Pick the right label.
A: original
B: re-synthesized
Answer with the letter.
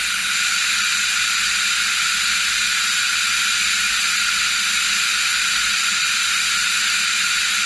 A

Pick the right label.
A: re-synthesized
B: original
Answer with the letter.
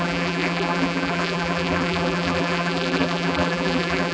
A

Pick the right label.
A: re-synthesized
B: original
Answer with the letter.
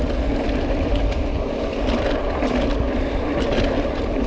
A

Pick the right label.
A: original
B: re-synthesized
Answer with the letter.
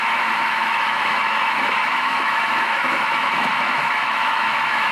B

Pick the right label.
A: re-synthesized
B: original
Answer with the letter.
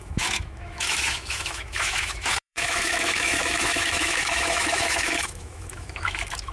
A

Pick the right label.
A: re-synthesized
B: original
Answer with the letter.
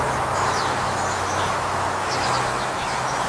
A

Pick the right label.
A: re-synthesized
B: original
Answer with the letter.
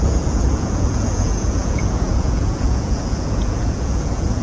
A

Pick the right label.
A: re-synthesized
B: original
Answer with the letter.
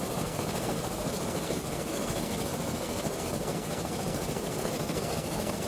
A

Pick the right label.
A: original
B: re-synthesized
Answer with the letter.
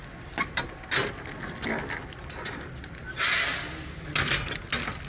A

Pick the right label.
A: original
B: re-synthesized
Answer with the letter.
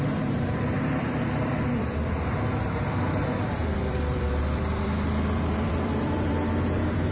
B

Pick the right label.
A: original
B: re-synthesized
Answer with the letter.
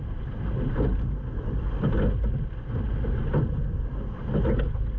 A